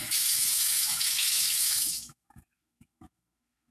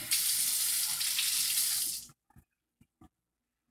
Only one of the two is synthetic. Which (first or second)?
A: first